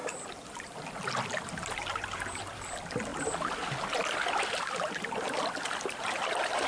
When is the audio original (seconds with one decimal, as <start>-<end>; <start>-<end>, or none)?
0.0-6.7